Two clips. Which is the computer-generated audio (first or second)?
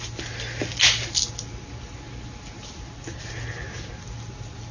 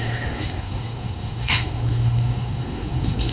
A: second